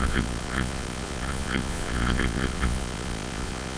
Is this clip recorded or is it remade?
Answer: remade